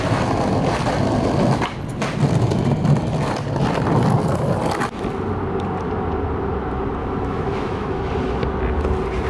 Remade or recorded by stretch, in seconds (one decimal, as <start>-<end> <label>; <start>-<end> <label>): 0.0-7.0 recorded; 7.0-8.0 remade; 8.0-9.3 recorded